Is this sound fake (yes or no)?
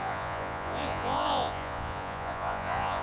yes